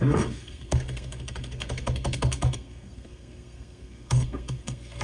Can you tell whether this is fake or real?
fake